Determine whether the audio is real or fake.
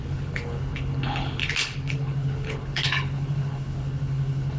fake